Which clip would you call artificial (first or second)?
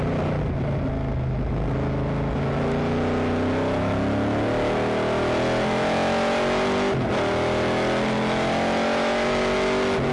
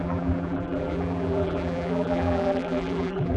second